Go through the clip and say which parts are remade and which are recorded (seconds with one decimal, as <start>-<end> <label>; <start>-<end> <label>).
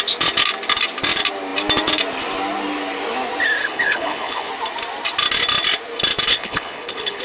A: 0.0-3.6 recorded; 3.6-4.5 remade; 4.5-6.3 recorded; 6.3-7.2 remade